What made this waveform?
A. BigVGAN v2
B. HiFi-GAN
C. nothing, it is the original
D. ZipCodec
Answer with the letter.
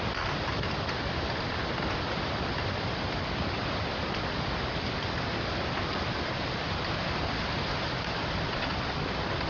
C